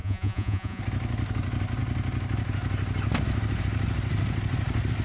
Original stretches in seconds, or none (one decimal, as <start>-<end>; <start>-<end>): 0.8-5.0